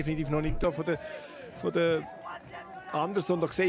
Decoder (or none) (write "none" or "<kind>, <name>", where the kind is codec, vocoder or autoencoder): none